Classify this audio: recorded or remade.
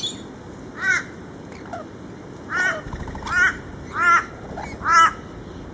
recorded